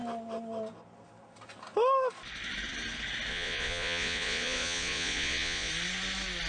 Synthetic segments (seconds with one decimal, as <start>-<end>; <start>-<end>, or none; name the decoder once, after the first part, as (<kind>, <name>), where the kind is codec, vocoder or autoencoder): 3.3-5.7 (vocoder, Vocos)